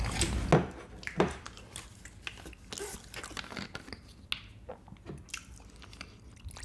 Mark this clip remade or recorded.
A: recorded